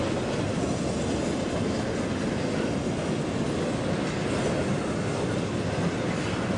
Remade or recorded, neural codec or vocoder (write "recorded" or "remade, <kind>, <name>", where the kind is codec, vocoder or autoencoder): recorded